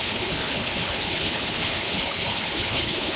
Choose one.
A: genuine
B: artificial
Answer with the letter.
B